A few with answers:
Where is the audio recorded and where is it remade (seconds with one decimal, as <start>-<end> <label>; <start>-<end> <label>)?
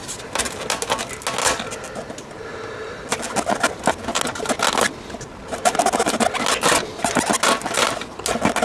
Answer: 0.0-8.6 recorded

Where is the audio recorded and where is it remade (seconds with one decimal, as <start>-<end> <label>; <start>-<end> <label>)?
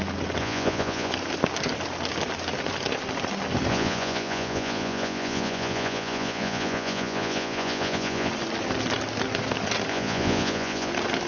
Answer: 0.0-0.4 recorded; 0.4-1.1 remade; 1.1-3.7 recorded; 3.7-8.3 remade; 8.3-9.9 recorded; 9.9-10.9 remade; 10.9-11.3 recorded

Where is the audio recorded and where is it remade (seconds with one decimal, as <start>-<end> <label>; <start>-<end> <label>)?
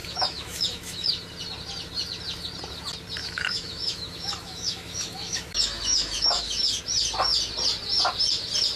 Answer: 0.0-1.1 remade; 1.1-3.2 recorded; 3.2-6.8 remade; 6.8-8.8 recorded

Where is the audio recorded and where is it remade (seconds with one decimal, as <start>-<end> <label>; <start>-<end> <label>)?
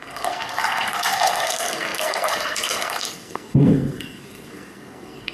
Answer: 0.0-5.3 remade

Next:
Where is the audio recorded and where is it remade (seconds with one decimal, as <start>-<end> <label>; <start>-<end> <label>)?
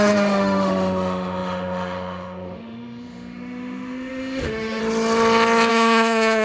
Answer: 0.0-4.8 remade; 4.8-5.7 recorded; 5.7-6.4 remade